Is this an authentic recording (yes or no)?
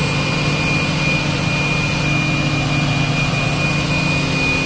yes